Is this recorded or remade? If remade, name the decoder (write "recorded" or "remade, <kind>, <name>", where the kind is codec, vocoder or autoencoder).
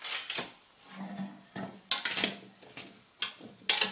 recorded